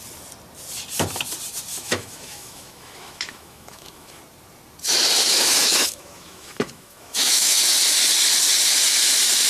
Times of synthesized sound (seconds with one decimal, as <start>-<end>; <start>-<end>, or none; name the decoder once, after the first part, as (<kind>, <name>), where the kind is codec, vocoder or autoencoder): 1.7-4.2 (autoencoder, DAC-VAE); 5.3-7.6